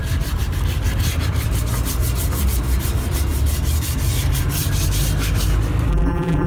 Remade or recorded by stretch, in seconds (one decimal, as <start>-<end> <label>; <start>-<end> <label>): 0.0-5.9 recorded; 5.9-6.5 remade